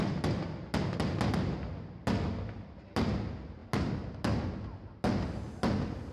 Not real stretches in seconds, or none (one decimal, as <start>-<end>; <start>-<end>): none